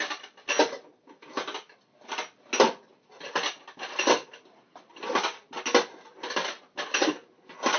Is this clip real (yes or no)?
yes